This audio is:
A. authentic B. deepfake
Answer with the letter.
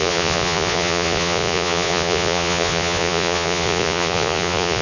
B